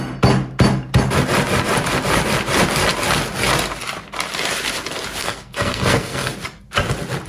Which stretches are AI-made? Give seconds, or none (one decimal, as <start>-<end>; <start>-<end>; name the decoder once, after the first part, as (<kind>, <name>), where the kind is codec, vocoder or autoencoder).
5.2-6.3 (codec, SNAC)